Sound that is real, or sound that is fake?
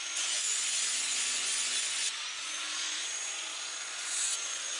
fake